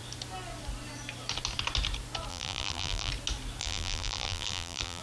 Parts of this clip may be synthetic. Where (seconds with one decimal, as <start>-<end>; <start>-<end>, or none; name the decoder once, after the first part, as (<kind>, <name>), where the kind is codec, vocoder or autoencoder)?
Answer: 2.3-3.1 (vocoder, BigVGAN v2); 3.6-5.0